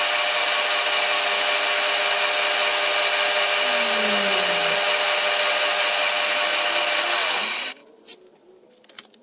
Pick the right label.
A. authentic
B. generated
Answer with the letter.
A